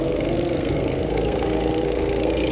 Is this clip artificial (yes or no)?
yes